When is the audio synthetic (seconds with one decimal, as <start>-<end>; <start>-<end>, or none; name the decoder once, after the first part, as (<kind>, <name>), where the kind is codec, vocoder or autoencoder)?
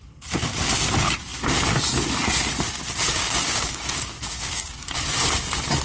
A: 3.1-5.0 (codec, DAC)